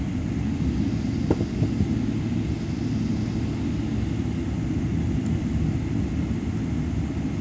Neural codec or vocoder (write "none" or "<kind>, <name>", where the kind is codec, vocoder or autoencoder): none